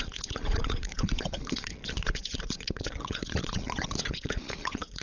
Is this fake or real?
fake